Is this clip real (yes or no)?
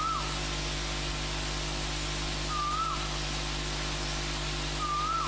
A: yes